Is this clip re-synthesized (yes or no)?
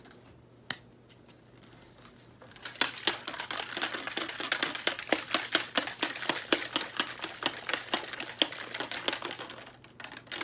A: no